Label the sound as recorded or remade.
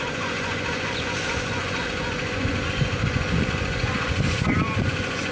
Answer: remade